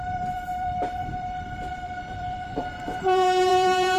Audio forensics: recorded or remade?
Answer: remade